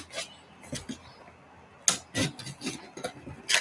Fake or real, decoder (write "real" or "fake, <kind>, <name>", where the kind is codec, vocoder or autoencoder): real